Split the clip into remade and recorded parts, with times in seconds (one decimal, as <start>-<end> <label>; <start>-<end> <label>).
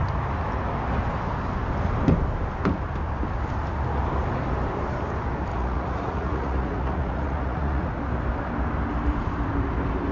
0.0-5.5 recorded; 5.5-7.9 remade; 7.9-10.1 recorded